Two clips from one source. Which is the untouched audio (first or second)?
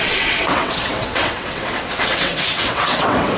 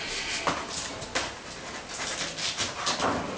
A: second